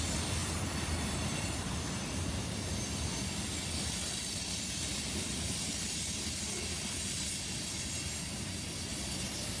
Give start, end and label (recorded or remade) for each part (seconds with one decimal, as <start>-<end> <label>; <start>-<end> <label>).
0.0-9.6 recorded